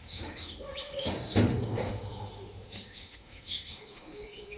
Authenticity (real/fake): fake